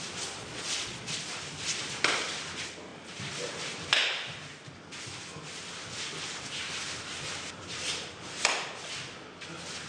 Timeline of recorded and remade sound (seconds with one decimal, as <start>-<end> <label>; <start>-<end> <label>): 0.0-0.4 recorded; 0.4-1.2 remade; 1.2-9.9 recorded